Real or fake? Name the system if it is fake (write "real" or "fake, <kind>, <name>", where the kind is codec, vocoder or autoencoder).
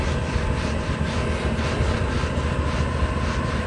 real